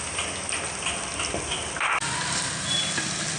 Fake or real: real